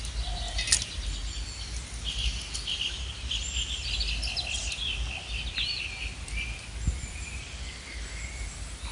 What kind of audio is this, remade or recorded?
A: recorded